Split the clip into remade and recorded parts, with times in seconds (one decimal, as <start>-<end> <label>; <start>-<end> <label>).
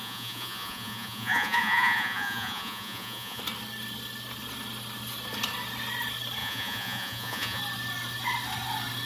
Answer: 0.0-3.4 remade; 3.4-6.4 recorded; 6.4-7.6 remade; 7.6-9.1 recorded